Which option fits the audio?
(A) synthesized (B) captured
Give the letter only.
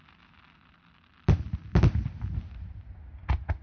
B